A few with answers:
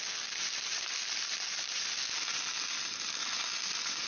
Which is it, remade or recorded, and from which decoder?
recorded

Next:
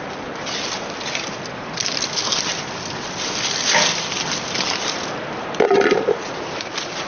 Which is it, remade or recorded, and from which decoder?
recorded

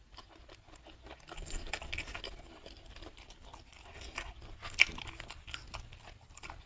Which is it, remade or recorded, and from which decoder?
recorded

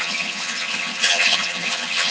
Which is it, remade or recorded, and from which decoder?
remade, vocoder, HiFi-GAN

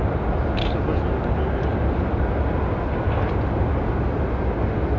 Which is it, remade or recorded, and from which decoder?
recorded